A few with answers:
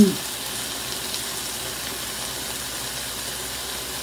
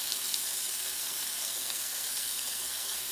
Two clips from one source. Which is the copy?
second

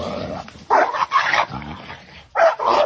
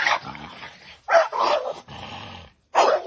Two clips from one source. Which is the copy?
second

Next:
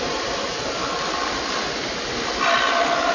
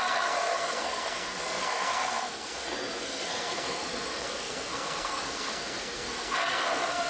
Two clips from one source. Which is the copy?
second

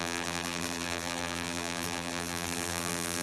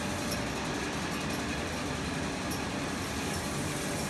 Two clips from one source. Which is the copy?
first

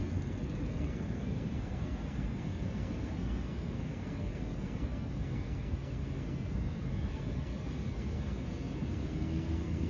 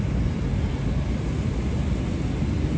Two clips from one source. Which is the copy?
first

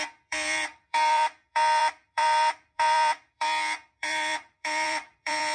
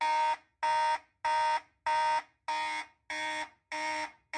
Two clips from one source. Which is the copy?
first